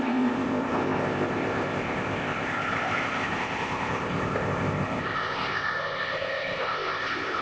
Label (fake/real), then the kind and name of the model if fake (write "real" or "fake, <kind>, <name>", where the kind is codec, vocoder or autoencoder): fake, codec, ZipCodec